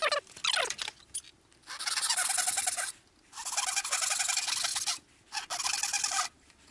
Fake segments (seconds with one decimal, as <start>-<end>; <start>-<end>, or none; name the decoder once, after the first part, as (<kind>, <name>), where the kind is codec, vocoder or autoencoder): none